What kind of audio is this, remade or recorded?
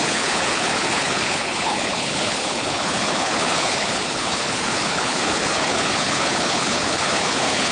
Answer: remade